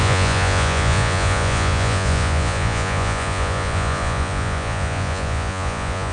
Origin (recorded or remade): remade